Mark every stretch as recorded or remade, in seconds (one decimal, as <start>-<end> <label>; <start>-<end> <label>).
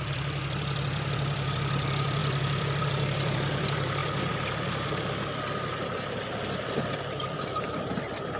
0.0-8.4 remade